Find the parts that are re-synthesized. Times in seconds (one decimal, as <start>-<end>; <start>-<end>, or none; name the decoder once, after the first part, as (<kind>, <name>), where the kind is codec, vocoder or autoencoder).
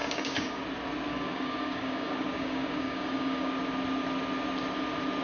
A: 0.0-0.6 (codec, DAC); 1.1-3.5